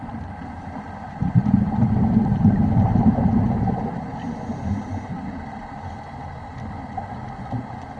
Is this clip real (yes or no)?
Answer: yes